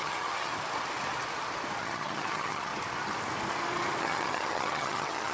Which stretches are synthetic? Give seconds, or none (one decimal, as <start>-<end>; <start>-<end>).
0.0-0.5; 1.8-2.7; 4.0-5.3